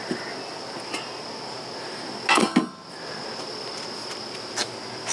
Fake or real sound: real